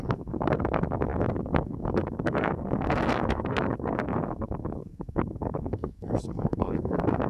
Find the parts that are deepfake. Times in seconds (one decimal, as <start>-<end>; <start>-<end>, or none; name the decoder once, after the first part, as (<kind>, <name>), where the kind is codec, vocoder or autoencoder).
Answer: 0.0-7.3 (codec, SNAC)

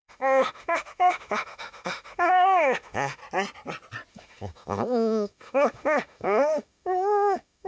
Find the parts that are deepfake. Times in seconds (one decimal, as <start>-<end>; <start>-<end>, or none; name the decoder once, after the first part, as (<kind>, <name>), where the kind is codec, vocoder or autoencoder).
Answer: 0.0-3.2 (autoencoder, DAC-VAE); 4.1-7.7

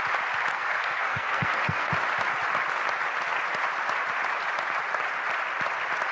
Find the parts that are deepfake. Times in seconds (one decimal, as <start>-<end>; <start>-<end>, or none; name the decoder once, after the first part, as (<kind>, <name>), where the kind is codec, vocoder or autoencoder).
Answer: 0.5-1.9 (codec, SNAC)

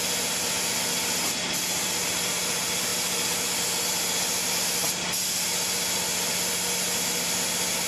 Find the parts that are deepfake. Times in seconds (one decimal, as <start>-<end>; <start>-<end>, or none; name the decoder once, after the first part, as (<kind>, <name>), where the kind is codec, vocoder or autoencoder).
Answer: none

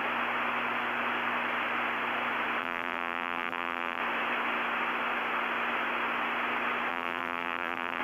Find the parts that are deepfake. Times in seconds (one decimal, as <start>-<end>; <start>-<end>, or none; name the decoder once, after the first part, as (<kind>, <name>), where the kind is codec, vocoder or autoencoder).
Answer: 2.6-4.0 (vocoder, BigVGAN v2); 6.9-8.0